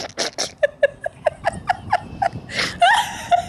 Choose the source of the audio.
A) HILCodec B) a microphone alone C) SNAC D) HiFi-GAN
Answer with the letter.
B